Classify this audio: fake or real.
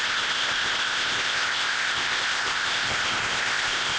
fake